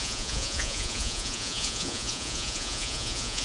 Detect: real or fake fake